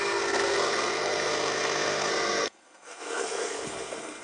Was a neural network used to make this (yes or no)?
yes